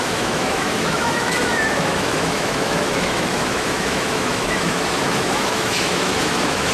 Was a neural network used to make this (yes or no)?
yes